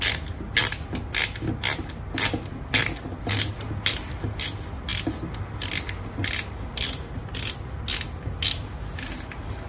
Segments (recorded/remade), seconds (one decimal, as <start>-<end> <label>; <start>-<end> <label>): 0.0-9.7 recorded